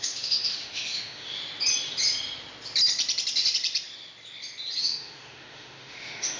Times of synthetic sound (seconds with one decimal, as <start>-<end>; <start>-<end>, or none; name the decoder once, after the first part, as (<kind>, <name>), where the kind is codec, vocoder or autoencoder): 0.0-1.4 (autoencoder, DAC-VAE); 4.8-6.4